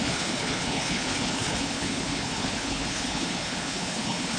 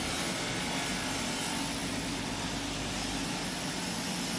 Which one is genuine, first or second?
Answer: second